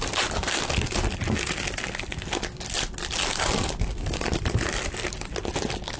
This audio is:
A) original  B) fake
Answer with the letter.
A